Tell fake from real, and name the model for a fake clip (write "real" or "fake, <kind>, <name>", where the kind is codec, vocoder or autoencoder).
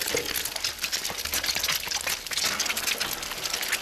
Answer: real